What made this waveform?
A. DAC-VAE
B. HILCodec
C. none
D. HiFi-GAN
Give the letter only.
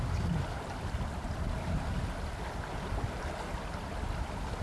C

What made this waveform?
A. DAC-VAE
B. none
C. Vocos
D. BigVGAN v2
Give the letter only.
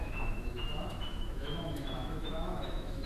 A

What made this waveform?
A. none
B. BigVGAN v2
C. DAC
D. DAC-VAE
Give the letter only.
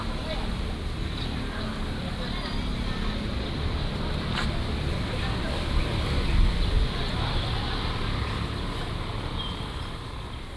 A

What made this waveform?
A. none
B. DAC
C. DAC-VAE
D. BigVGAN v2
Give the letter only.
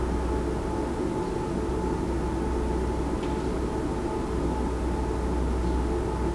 A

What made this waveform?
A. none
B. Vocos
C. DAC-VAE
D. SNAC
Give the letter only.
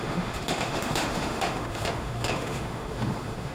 C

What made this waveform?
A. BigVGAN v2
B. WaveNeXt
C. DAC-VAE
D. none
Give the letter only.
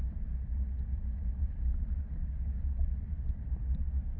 D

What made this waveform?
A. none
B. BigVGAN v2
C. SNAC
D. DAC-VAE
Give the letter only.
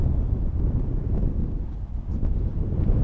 A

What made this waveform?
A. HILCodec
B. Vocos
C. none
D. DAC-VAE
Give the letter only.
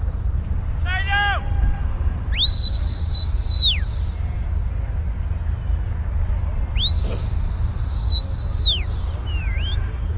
C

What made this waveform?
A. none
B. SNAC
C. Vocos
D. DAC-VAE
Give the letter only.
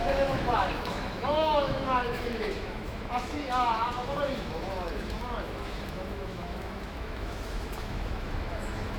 D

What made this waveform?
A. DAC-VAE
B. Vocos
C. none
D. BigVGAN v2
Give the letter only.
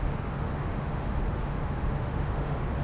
A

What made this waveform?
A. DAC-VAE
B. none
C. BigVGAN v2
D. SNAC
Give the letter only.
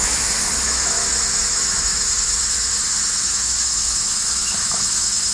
A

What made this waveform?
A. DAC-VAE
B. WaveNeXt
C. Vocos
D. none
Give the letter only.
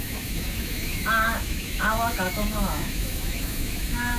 A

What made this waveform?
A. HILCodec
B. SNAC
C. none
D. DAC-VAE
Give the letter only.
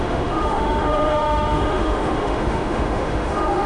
D